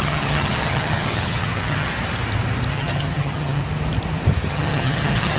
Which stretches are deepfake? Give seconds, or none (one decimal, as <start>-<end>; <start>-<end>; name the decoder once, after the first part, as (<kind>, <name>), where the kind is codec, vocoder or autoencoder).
0.0-1.9 (vocoder, HiFi-GAN); 2.7-3.6; 4.5-5.4